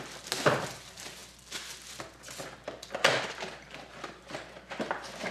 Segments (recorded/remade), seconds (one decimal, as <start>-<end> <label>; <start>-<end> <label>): 0.0-5.3 recorded